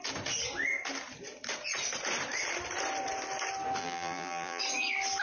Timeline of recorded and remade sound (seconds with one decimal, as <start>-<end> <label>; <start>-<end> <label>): 0.0-3.8 recorded; 3.8-4.6 remade; 4.6-5.2 recorded